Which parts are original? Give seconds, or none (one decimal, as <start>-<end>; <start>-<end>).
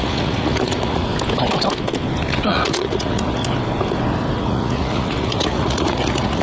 1.1-2.5; 3.4-4.4